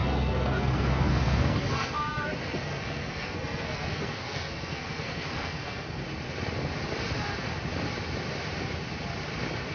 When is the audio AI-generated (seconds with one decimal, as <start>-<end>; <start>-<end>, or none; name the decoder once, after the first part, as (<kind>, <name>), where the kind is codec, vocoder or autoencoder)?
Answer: 0.0-6.0 (codec, SNAC)